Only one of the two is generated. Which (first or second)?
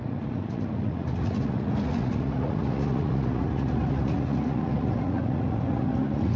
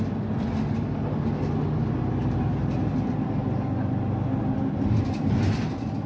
first